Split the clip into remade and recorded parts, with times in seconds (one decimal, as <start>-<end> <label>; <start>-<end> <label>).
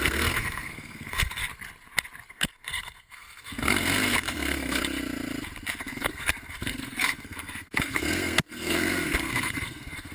0.0-1.4 remade; 1.4-2.3 recorded; 2.3-4.8 remade; 4.8-5.8 recorded; 5.8-10.1 remade